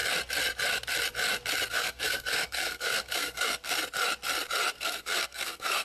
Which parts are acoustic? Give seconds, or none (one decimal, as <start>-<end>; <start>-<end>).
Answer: 0.0-1.7; 3.7-4.7